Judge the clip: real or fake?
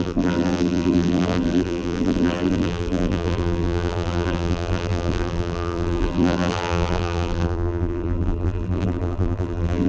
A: fake